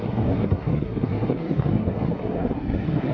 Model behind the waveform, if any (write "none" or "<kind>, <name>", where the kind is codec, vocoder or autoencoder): codec, SNAC